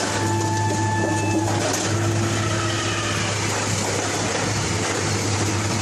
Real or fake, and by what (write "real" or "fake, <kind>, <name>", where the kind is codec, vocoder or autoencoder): real